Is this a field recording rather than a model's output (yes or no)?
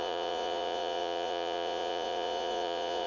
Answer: no